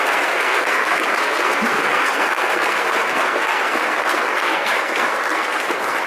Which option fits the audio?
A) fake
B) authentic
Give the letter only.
A